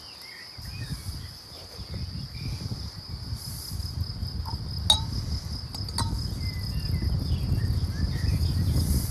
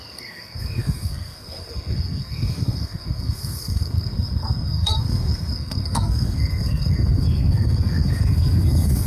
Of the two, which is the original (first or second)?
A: first